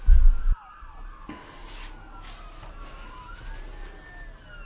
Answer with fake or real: real